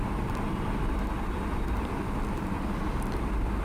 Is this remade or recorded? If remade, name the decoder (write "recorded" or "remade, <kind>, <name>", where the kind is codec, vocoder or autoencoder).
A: remade, vocoder, BigVGAN v2